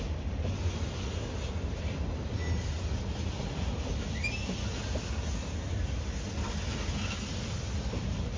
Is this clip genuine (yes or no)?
yes